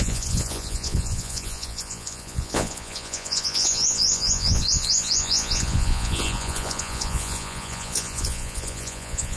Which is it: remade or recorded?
remade